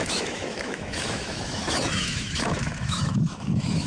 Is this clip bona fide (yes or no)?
no